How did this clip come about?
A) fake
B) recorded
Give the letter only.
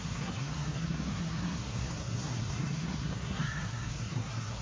A